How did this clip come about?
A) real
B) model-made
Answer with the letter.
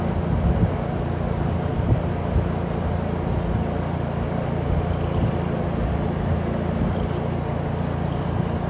A